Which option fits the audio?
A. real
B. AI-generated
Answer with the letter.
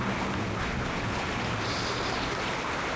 A